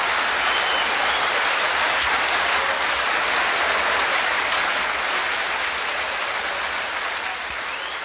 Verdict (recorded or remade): recorded